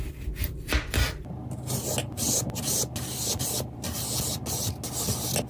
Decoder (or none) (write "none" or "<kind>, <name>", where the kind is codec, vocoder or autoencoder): none